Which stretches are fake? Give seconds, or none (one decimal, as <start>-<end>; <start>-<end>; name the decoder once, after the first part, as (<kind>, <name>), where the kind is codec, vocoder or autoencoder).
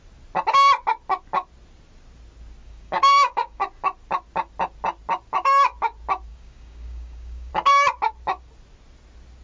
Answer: 2.6-3.6 (codec, DAC); 6.3-7.5